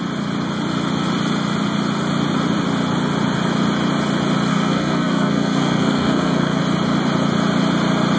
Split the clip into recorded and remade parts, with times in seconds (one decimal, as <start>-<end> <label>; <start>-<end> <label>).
0.0-4.5 recorded; 4.5-6.6 remade; 6.6-8.2 recorded